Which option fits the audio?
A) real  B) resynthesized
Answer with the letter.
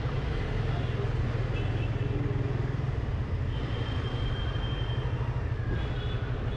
A